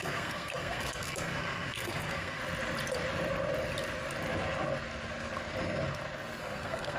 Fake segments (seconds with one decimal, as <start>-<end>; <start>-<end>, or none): 0.0-2.4; 6.4-7.0